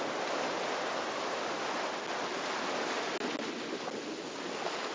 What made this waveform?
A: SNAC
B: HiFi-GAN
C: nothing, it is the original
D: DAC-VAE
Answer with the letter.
C